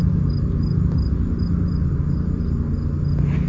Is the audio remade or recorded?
recorded